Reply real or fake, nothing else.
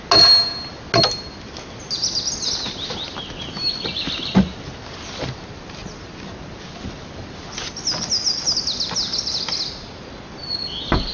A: real